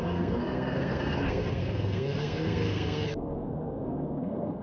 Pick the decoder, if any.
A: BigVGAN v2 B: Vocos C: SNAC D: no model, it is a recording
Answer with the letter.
C